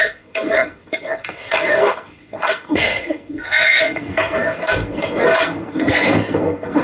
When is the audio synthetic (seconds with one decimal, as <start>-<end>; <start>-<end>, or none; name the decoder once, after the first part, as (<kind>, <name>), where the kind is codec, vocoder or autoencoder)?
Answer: 0.0-6.8 (codec, SNAC)

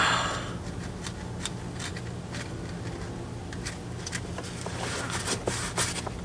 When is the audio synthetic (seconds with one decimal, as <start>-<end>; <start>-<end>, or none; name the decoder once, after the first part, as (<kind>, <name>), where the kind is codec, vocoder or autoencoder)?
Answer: none

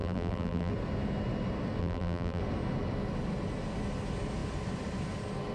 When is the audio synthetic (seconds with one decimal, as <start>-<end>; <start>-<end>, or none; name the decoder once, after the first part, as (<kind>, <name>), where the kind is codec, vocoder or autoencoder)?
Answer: 0.0-0.7 (vocoder, BigVGAN v2); 1.8-2.4